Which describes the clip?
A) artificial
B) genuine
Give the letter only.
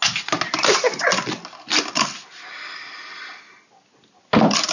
B